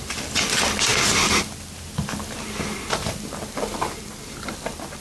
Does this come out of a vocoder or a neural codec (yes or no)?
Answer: yes